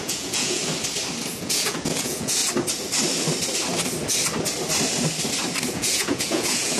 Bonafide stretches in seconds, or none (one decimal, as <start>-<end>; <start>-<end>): 0.6-1.3; 2.4-5.7